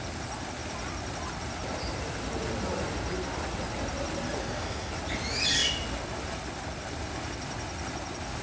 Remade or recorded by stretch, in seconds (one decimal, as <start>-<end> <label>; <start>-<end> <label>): 0.0-4.4 recorded; 4.4-4.9 remade; 4.9-8.4 recorded